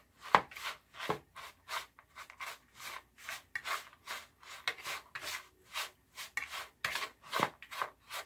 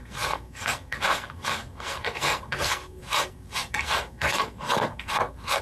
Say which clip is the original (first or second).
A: first